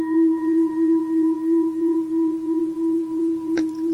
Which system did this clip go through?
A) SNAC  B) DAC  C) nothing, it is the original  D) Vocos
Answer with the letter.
D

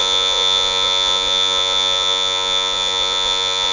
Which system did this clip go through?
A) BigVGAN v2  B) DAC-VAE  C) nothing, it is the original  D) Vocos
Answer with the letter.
D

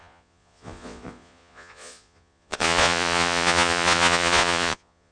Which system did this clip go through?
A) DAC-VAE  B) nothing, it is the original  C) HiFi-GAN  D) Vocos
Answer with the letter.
D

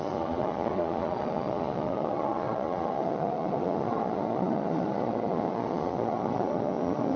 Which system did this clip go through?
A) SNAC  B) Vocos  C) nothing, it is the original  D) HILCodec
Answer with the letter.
B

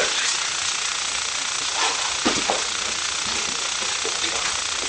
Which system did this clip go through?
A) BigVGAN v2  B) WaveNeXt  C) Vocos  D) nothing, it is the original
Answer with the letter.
C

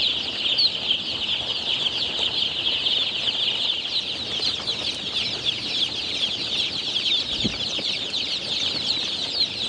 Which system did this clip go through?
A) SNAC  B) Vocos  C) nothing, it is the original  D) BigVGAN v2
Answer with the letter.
C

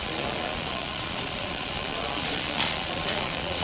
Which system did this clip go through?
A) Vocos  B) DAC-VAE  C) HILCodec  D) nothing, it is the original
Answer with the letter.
A